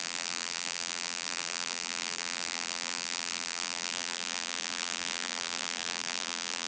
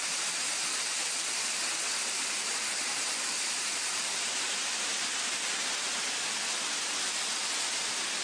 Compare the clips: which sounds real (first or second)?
second